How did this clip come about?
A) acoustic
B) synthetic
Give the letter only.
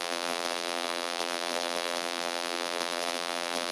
B